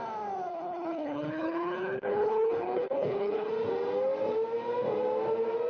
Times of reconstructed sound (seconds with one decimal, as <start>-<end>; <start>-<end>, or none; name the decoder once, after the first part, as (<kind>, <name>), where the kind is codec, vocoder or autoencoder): 0.5-3.5 (codec, HILCodec)